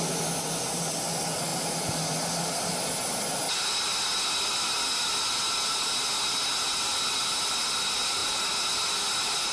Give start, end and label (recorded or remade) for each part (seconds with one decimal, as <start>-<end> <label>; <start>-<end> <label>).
0.0-9.5 recorded